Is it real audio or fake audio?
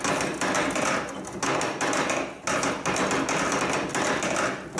real